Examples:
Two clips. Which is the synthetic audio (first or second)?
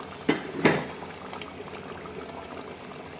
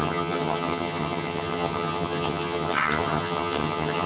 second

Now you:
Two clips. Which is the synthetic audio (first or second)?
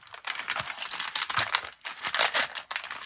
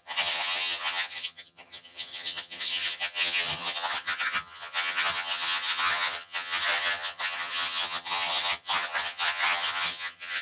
second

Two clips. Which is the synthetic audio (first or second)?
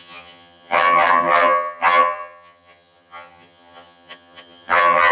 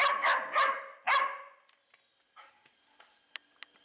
first